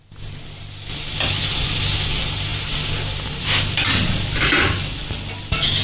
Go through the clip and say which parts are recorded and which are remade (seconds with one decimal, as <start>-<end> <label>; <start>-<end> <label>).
0.0-5.8 recorded